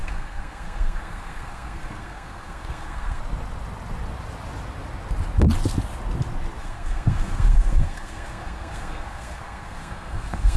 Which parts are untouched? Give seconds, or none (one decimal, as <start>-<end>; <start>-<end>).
3.2-6.6